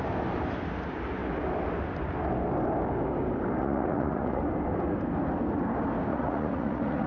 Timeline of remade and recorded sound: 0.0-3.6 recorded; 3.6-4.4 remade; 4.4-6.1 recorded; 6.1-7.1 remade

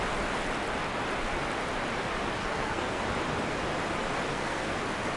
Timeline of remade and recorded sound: 0.0-2.4 recorded; 2.4-3.0 remade; 3.0-4.3 recorded; 4.3-4.8 remade; 4.8-5.2 recorded

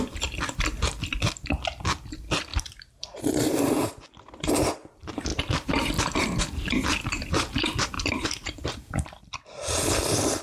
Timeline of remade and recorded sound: 0.0-2.5 recorded; 2.5-4.5 remade; 4.5-5.3 recorded; 5.3-9.2 remade; 9.2-10.4 recorded

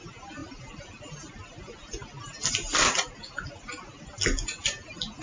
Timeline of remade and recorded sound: 0.0-5.2 recorded